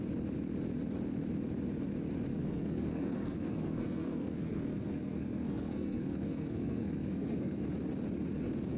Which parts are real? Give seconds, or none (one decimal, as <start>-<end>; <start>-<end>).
0.0-2.3; 7.6-8.8